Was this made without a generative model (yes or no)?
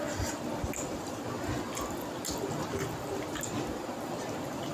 yes